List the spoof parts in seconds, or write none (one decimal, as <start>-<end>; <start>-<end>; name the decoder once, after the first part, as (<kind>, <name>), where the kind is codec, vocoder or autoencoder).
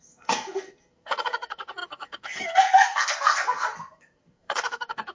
0.0-5.1 (codec, SNAC)